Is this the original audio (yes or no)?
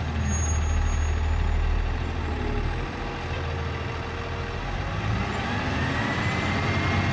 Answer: yes